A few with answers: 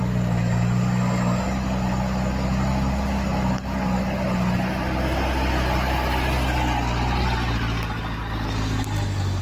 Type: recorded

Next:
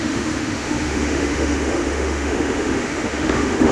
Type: remade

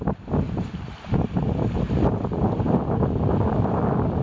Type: recorded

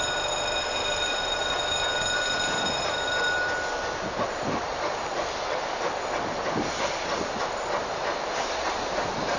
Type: recorded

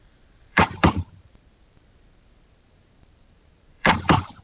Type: remade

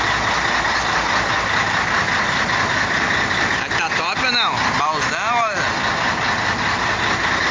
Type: recorded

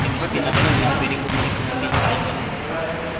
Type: recorded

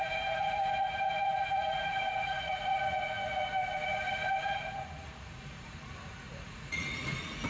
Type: remade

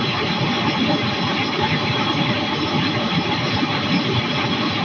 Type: recorded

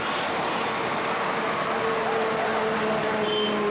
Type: recorded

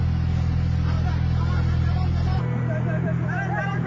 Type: recorded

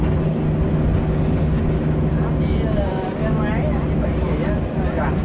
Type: recorded